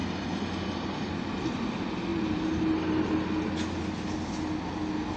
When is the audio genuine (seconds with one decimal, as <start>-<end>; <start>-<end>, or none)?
0.0-5.2